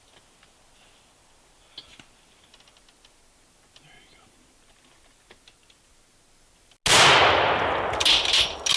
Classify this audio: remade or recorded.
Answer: recorded